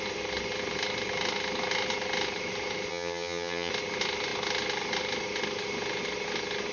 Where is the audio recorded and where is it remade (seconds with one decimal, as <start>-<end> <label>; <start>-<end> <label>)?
0.0-2.9 recorded; 2.9-3.7 remade; 3.7-6.7 recorded